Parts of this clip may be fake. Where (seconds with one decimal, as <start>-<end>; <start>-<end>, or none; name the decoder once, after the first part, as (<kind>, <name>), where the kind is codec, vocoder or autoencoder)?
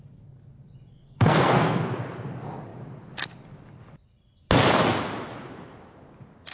0.9-1.8 (codec, SNAC)